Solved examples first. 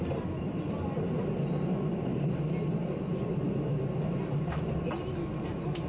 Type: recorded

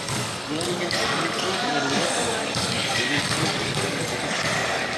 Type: remade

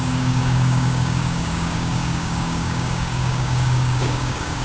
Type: remade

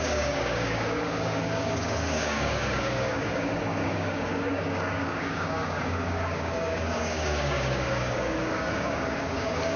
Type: remade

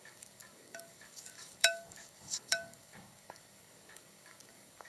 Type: remade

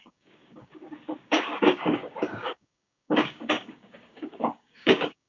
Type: remade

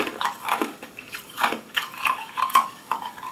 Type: remade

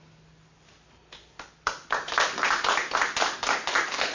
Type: recorded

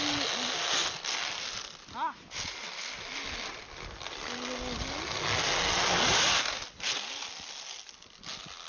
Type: recorded